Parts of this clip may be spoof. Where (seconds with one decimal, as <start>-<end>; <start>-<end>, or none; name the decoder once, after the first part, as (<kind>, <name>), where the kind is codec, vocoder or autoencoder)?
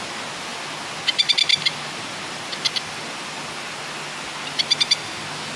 none